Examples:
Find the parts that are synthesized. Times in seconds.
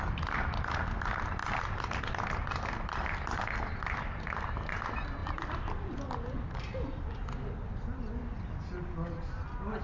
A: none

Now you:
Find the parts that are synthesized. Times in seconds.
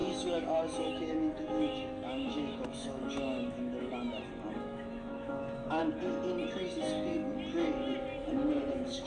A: 0.0-3.9 (autoencoder, DAC-VAE); 4.6-5.8; 8.7-9.1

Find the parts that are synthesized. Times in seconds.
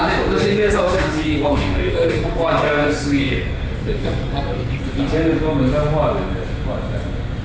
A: 0.4-4.8 (codec, SNAC)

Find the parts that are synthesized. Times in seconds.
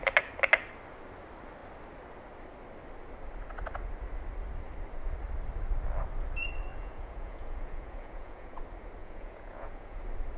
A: 6.7-8.6 (vocoder, Vocos); 9.0-10.0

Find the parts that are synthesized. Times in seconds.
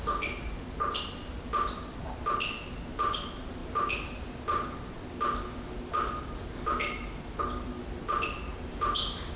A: none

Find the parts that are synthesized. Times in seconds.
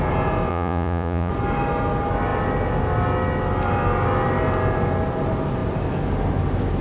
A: 0.5-1.3 (vocoder, Vocos)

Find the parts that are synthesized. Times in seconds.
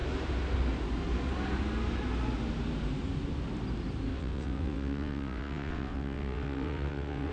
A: 4.1-7.3 (vocoder, WaveNeXt)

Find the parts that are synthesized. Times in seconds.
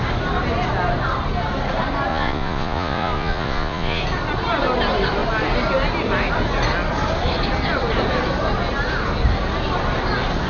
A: 2.1-4.0 (vocoder, Vocos)